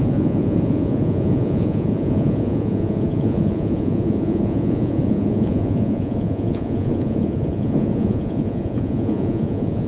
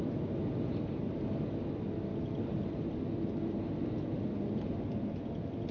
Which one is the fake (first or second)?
first